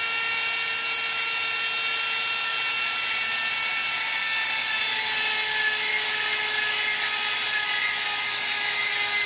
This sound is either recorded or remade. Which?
recorded